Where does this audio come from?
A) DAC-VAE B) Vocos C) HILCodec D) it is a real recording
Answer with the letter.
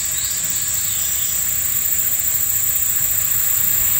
D